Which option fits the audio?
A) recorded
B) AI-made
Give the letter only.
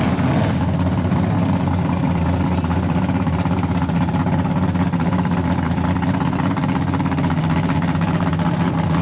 A